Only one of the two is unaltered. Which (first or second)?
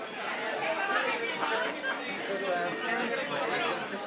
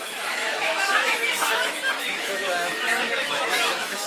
first